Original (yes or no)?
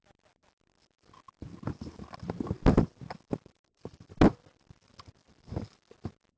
yes